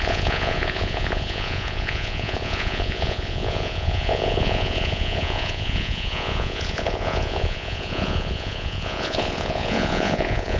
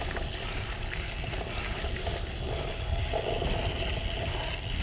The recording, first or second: second